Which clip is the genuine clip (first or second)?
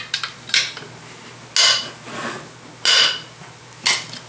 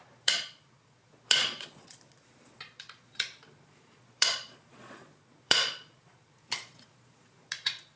first